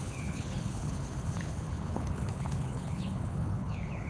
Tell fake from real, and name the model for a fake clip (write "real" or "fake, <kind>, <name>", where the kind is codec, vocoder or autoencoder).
fake, codec, HILCodec